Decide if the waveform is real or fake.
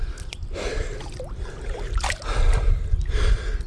real